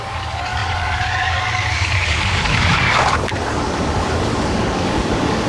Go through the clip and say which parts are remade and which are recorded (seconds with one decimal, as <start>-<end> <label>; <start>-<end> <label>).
0.0-5.5 remade